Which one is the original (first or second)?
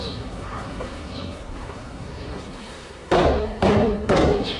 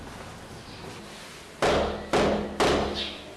second